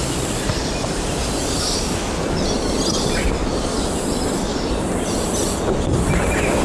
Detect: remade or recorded recorded